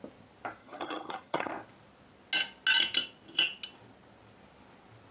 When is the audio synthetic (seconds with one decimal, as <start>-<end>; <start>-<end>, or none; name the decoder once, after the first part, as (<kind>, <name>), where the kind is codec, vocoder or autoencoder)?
0.6-1.5 (vocoder, HiFi-GAN)